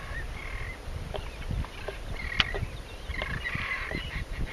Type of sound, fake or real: real